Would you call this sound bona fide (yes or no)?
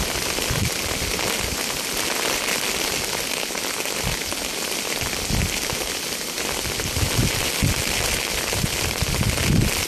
yes